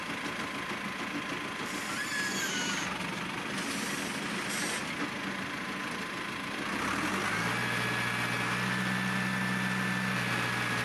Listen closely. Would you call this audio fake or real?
real